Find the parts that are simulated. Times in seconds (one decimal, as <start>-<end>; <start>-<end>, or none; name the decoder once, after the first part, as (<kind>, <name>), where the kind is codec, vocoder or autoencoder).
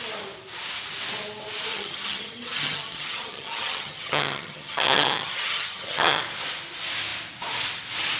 1.7-6.2 (vocoder, HiFi-GAN)